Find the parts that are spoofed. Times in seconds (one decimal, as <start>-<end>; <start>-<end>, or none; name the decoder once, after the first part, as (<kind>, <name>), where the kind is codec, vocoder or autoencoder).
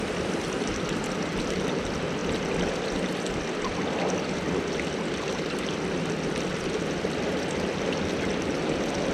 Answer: none